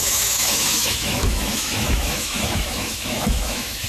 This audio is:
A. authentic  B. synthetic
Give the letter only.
B